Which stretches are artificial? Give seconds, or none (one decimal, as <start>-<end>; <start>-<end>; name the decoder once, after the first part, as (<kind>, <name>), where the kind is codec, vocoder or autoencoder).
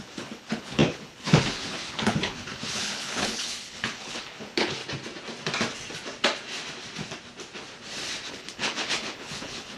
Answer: 0.0-4.8 (codec, HILCodec); 8.3-9.8